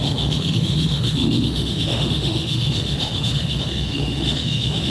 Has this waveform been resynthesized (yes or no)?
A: yes